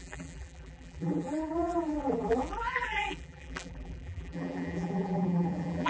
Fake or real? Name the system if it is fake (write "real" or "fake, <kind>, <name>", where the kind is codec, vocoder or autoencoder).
fake, vocoder, BigVGAN v2